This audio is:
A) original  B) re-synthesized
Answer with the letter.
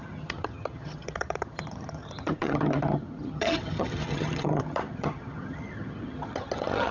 B